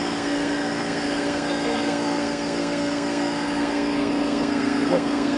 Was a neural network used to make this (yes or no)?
yes